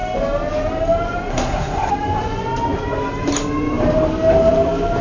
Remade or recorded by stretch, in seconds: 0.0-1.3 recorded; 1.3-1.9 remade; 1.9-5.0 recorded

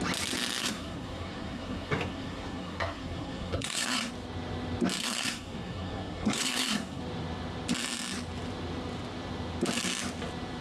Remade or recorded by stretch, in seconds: 0.0-0.6 recorded; 0.6-4.1 remade; 4.1-5.0 recorded; 5.0-7.0 remade; 7.0-10.6 recorded

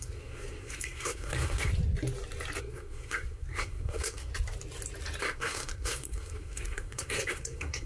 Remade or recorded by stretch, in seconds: 0.0-1.7 remade; 1.7-2.6 recorded; 2.6-4.3 remade; 4.3-5.2 recorded; 5.2-7.9 remade

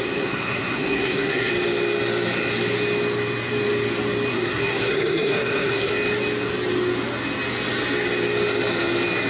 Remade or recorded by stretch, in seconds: 0.0-1.5 remade; 1.5-4.3 recorded; 4.3-5.9 remade; 5.9-9.3 recorded

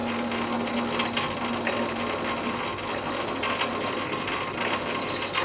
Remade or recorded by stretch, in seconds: 0.0-5.4 recorded

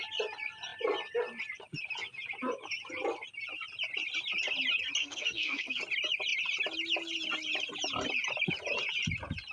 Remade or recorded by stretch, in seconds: 0.0-5.0 recorded; 5.0-5.8 remade; 5.8-9.5 recorded

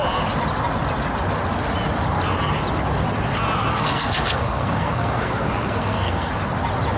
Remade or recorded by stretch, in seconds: 0.0-3.7 recorded; 3.7-6.3 remade; 6.3-7.0 recorded